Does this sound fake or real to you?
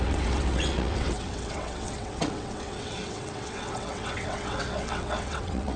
fake